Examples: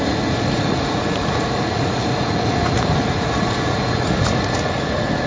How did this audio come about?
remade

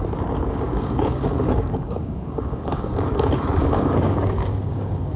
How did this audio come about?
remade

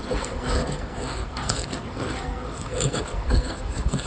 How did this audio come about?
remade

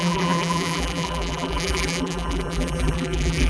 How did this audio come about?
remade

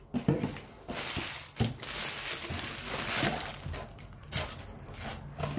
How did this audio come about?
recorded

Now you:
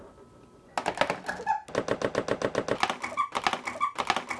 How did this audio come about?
recorded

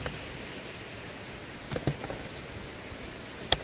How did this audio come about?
recorded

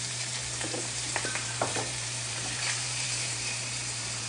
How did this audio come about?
remade